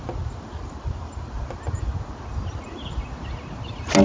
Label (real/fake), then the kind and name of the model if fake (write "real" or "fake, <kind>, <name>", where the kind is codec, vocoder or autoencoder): real